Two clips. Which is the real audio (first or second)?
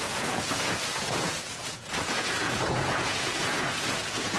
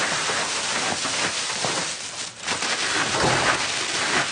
second